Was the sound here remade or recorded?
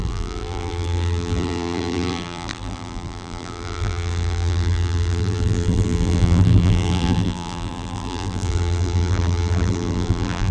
remade